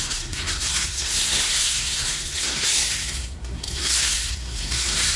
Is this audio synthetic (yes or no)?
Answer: yes